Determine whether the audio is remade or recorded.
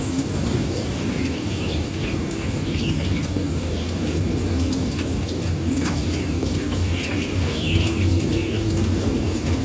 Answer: remade